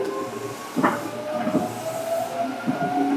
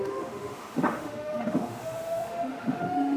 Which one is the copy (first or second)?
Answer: second